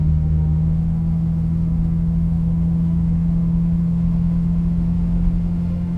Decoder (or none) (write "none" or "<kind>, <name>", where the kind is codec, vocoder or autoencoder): autoencoder, DAC-VAE